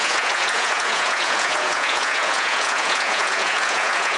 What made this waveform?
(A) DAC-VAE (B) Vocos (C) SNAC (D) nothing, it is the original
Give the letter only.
B